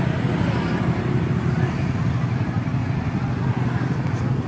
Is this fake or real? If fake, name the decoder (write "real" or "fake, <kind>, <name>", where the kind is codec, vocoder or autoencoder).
real